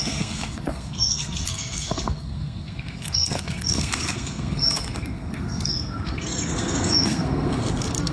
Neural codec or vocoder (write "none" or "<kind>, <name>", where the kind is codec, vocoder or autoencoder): codec, SNAC